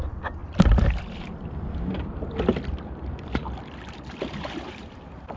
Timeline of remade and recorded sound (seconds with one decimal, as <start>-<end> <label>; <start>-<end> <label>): 0.0-0.4 recorded; 0.4-3.6 remade; 3.6-5.4 recorded